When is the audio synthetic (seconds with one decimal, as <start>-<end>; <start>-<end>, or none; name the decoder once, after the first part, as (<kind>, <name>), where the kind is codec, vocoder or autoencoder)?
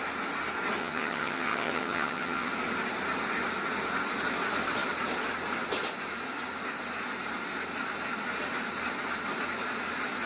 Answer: 0.8-2.5 (vocoder, HiFi-GAN)